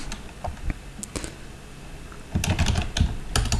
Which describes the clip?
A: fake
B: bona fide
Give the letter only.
B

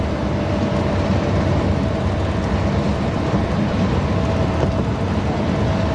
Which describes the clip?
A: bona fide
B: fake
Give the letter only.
A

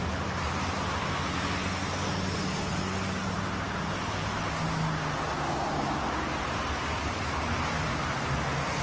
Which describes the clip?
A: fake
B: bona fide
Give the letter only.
B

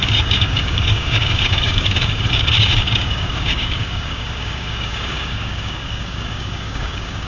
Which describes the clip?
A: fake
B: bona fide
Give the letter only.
A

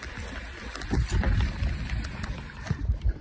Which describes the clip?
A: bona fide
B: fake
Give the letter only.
A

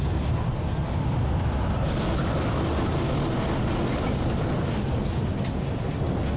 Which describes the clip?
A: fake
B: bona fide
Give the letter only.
B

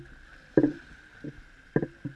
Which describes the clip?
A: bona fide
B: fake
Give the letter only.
A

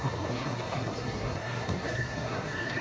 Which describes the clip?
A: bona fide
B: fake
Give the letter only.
B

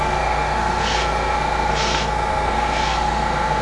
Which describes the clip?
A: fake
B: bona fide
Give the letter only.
A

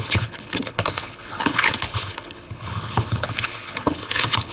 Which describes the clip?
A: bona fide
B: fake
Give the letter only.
B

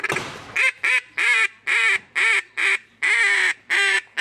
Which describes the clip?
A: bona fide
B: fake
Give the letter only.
B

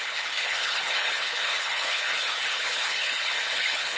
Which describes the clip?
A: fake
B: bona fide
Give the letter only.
A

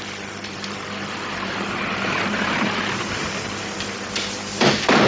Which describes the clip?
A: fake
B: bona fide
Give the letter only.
B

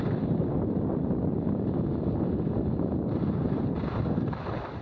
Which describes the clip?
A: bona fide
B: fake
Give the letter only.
A